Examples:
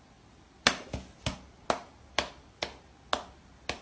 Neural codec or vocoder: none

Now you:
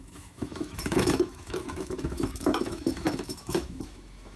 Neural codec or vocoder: autoencoder, DAC-VAE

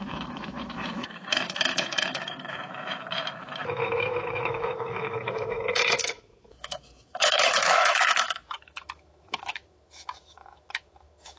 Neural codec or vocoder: autoencoder, DAC-VAE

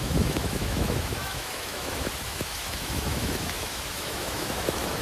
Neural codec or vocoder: autoencoder, DAC-VAE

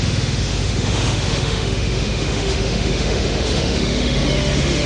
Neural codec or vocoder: autoencoder, DAC-VAE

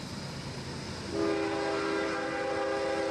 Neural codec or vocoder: none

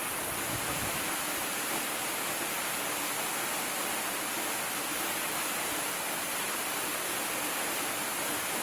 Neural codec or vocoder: none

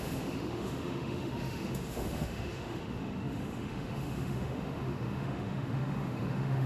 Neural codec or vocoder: autoencoder, DAC-VAE